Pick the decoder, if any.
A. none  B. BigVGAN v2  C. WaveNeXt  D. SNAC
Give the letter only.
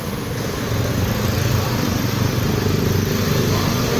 A